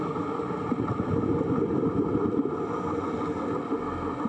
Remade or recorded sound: recorded